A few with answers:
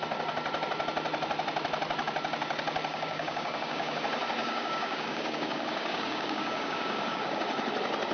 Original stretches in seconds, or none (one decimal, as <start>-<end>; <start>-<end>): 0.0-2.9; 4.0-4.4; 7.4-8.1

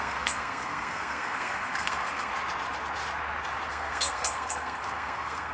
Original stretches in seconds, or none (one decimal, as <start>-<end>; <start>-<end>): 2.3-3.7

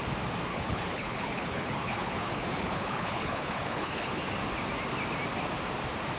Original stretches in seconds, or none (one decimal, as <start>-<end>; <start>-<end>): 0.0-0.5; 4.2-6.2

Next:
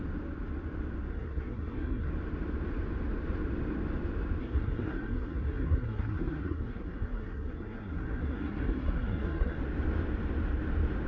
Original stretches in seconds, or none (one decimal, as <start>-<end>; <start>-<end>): 0.0-1.1; 2.1-4.4; 9.6-11.1

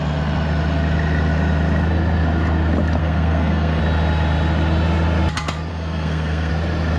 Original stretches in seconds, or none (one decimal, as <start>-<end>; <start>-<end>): 0.0-3.0; 3.8-5.7; 6.5-7.0